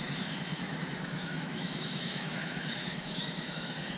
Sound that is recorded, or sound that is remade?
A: remade